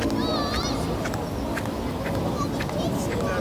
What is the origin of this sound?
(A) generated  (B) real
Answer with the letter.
B